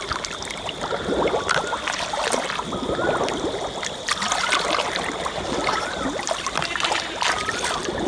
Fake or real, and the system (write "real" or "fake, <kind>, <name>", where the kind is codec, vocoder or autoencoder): real